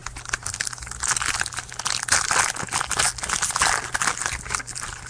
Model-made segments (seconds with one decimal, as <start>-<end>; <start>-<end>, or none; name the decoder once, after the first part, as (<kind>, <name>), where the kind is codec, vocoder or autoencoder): none